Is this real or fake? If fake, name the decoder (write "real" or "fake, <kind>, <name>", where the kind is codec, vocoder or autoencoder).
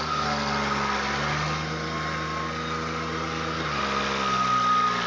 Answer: real